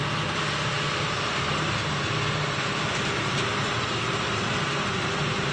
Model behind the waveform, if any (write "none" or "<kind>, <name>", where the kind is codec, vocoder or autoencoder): vocoder, BigVGAN v2